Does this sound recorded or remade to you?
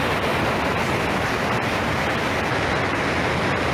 recorded